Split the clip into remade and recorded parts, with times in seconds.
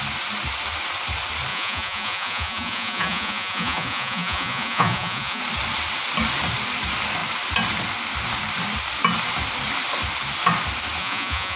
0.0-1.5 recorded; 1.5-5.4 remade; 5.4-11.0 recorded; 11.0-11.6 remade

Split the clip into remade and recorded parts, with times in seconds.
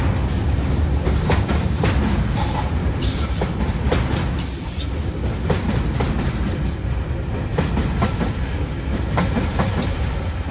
0.0-10.5 recorded